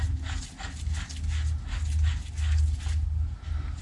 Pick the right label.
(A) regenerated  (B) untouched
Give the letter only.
B